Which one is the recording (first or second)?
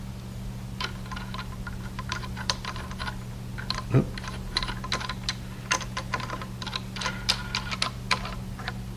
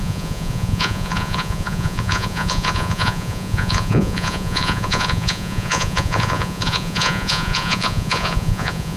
first